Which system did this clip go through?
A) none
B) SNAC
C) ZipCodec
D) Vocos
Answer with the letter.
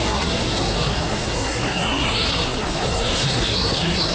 B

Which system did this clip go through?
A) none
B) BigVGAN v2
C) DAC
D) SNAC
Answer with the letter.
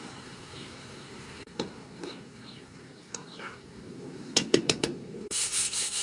D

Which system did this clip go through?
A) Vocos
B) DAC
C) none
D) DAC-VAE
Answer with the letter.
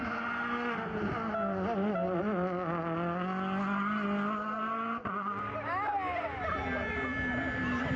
C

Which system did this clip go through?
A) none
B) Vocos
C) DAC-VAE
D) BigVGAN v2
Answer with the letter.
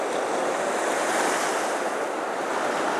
A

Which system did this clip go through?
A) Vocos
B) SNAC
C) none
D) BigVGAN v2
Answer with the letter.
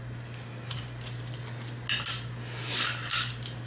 C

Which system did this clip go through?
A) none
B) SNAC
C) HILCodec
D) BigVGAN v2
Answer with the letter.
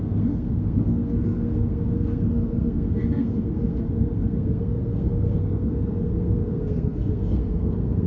B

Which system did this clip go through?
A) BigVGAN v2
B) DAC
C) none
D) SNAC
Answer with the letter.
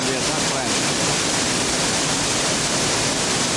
C